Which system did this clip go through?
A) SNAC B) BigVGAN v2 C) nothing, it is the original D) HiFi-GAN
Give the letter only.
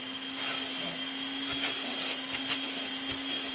C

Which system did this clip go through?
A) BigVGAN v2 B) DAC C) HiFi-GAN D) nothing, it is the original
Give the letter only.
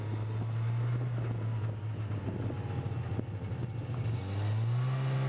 D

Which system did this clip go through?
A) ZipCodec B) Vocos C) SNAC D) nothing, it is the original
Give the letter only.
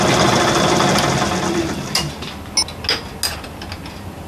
D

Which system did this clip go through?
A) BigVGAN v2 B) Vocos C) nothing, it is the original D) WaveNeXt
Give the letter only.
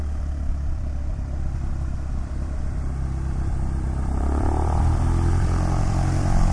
A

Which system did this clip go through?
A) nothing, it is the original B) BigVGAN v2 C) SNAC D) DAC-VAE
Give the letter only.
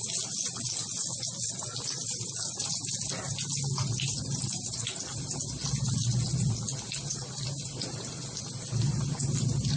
A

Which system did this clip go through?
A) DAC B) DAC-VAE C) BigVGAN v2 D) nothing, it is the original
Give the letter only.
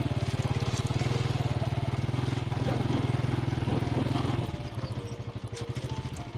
D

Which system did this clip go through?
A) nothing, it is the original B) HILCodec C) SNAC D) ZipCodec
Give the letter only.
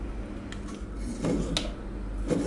A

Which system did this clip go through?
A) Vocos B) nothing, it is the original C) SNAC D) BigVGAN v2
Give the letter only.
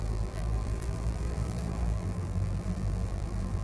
D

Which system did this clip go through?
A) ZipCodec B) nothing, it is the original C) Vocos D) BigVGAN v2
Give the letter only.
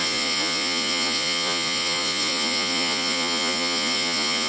C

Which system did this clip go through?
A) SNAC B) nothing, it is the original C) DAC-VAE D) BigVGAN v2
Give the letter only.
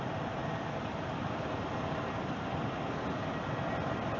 B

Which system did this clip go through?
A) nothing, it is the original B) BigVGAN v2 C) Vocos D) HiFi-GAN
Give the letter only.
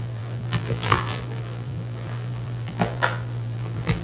B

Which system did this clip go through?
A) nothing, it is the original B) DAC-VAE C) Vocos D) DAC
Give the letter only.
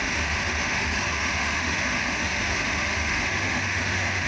B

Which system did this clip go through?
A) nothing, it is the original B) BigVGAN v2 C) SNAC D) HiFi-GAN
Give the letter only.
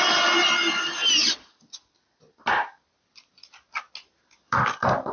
A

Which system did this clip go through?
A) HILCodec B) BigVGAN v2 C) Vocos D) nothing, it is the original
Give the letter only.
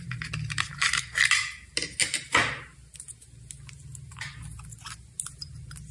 D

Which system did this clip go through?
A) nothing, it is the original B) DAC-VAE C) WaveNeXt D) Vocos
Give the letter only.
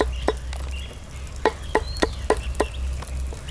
A